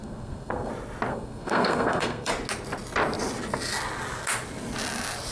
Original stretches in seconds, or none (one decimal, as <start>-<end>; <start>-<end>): 0.7-1.1; 2.3-5.3